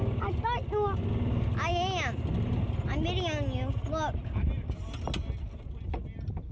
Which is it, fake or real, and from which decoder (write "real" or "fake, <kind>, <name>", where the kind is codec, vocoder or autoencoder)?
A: real